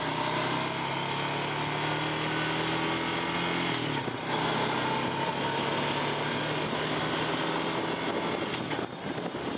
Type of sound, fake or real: real